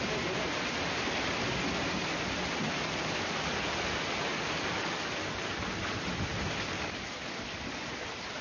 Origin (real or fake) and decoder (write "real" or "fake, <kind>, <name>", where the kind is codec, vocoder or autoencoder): real